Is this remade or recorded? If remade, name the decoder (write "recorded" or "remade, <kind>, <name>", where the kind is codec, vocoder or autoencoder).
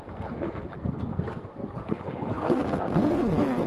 remade, codec, SNAC